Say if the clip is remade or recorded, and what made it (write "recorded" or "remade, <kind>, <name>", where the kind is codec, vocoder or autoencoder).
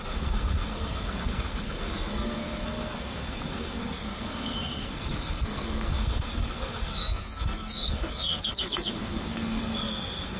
remade, codec, SNAC